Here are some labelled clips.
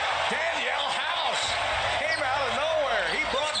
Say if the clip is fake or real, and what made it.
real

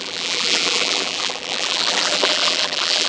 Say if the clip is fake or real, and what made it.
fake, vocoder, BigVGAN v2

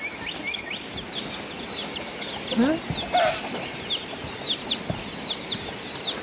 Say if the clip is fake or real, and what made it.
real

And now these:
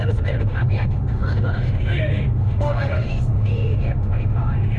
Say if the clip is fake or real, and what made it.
fake, autoencoder, DAC-VAE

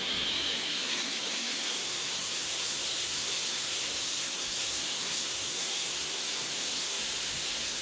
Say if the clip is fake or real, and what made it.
fake, codec, SNAC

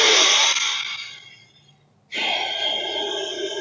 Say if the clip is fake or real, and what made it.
real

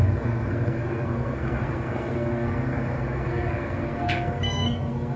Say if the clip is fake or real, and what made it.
fake, codec, SNAC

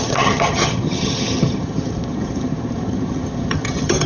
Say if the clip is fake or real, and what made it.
fake, vocoder, HiFi-GAN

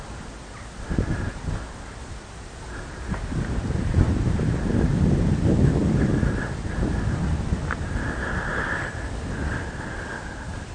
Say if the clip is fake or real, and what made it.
real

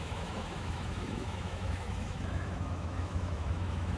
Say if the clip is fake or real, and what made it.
fake, autoencoder, DAC-VAE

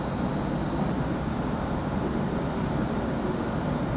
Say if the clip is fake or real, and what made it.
real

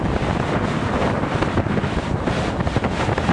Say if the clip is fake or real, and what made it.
real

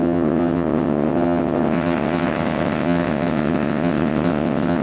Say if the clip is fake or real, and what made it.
fake, vocoder, WaveNeXt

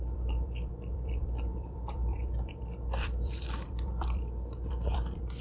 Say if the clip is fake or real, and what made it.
fake, vocoder, BigVGAN v2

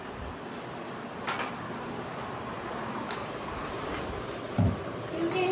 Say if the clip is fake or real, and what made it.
real